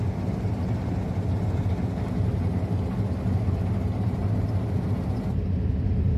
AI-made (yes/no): no